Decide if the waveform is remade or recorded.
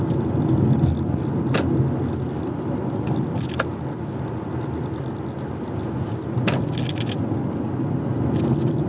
recorded